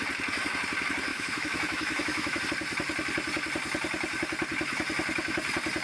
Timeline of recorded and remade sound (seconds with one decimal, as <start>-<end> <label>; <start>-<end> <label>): 0.0-1.1 recorded; 1.1-2.4 remade; 2.4-5.8 recorded